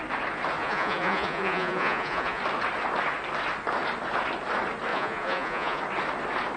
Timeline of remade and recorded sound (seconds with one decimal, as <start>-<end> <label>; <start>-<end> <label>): 0.0-0.6 recorded; 0.6-2.4 remade; 2.4-4.9 recorded; 4.9-5.8 remade; 5.8-6.6 recorded